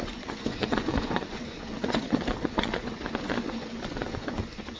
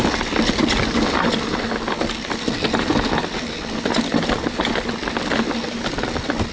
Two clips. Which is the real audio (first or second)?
second